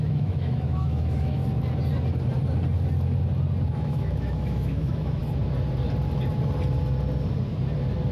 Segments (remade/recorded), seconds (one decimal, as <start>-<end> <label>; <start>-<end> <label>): 0.0-1.4 remade; 1.4-3.7 recorded; 3.7-5.2 remade; 5.2-8.1 recorded